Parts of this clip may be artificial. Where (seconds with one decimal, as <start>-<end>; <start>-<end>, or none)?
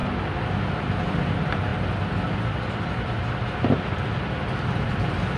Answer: 0.7-1.7; 3.9-5.4